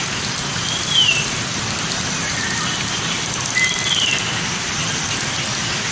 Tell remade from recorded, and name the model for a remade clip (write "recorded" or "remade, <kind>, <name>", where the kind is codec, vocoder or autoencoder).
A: recorded